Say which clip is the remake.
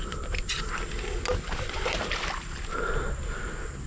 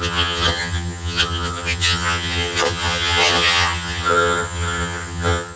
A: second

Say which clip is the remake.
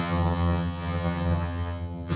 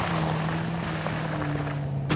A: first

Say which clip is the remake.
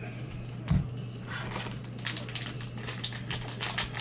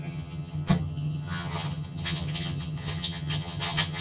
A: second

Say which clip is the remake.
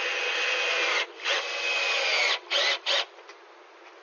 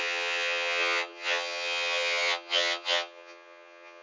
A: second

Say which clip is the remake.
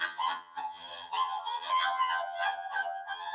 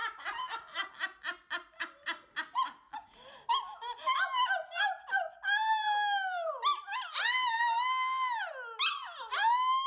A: first